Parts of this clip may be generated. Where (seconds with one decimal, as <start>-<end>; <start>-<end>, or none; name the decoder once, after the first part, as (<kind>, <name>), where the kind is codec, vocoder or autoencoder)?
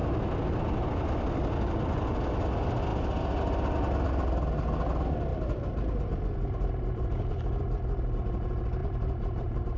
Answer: 5.3-7.3 (vocoder, BigVGAN v2); 8.8-9.8